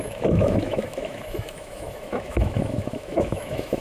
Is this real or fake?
fake